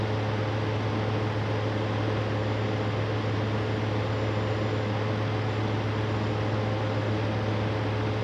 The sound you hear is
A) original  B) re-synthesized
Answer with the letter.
A